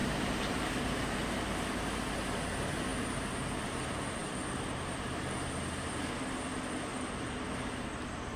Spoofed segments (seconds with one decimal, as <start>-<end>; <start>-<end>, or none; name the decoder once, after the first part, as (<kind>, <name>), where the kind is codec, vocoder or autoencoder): 0.0-0.7 (vocoder, BigVGAN v2); 6.9-7.5